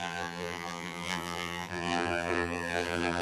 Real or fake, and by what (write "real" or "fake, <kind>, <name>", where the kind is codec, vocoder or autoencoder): fake, vocoder, BigVGAN v2